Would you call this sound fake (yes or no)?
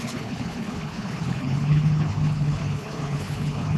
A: yes